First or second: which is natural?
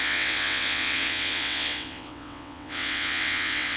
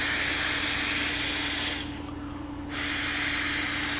second